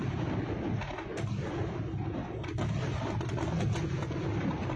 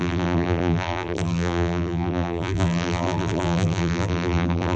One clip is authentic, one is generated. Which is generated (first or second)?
second